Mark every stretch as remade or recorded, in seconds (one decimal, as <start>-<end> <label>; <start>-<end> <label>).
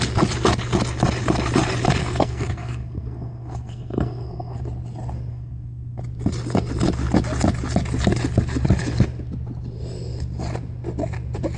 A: 0.0-2.0 recorded; 2.0-4.6 remade; 4.6-5.3 recorded; 5.3-6.0 remade; 6.0-11.6 recorded